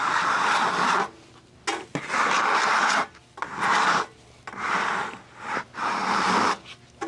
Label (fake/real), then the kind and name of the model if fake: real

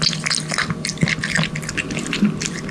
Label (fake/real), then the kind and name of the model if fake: real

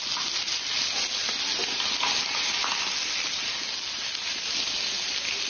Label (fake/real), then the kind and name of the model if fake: real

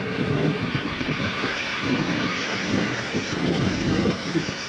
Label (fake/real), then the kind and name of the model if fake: fake, codec, SNAC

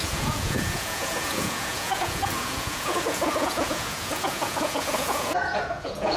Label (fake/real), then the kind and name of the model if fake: fake, vocoder, Vocos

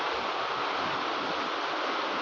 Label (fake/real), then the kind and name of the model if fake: real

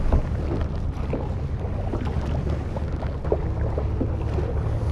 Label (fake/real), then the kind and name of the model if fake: real